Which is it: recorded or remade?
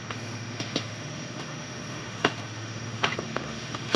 remade